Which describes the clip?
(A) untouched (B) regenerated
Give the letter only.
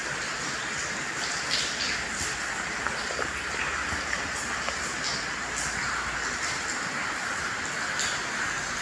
A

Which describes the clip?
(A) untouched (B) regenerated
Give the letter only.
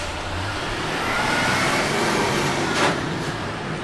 B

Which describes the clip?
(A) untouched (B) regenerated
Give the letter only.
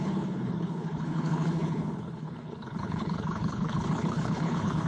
B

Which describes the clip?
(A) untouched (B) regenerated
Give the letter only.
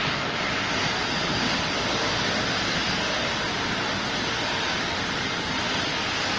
A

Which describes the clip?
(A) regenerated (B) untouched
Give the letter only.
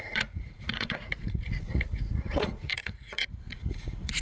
A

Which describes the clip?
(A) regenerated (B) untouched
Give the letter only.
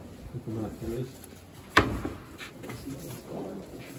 B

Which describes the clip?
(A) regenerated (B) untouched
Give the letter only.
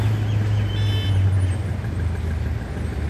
B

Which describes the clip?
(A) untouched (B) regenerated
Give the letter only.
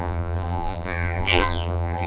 B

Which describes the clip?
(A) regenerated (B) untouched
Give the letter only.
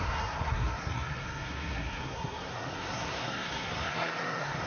A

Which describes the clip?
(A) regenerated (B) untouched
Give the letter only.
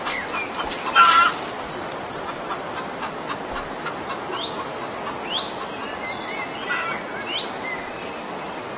B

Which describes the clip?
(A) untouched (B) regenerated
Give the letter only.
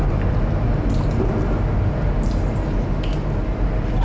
A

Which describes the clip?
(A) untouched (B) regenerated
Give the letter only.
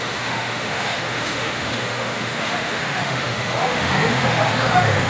B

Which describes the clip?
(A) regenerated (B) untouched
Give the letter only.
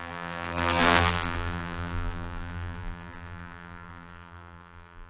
A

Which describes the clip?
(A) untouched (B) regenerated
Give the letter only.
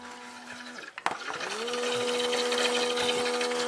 A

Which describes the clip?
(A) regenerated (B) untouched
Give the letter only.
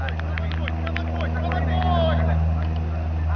B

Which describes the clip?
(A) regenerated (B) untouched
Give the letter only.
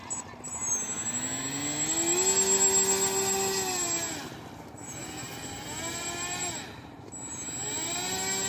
B